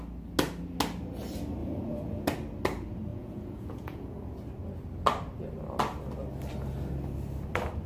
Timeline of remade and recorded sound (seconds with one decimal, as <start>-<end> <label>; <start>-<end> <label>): 0.0-1.6 recorded; 1.6-2.2 remade; 2.2-3.1 recorded; 3.1-4.3 remade; 4.3-7.9 recorded